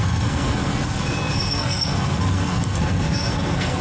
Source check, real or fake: fake